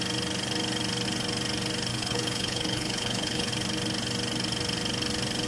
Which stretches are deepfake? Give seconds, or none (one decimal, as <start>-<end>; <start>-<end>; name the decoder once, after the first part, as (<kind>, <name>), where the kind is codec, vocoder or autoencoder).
1.9-3.5 (codec, HILCodec)